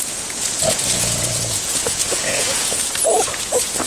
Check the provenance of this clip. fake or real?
fake